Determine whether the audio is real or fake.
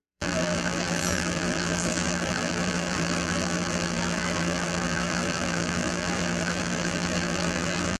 fake